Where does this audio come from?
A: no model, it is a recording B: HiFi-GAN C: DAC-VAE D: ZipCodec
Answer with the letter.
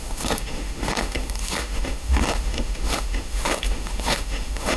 C